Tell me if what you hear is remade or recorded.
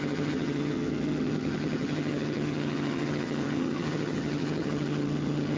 remade